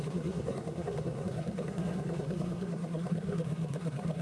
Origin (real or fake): fake